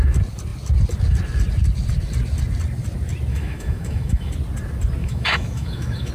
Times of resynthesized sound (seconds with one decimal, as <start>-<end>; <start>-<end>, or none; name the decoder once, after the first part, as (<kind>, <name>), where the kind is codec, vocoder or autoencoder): 3.3-4.3 (autoencoder, DAC-VAE); 5.0-6.1